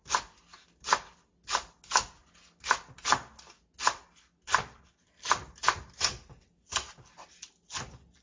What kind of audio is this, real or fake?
real